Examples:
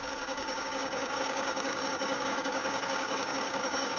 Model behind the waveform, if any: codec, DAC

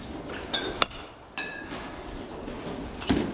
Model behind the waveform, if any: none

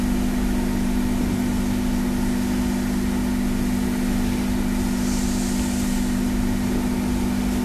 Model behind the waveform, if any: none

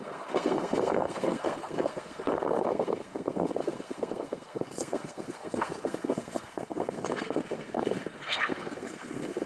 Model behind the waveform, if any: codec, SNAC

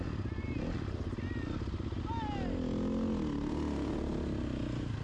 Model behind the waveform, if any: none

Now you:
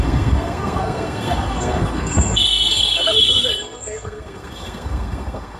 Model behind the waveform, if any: codec, SNAC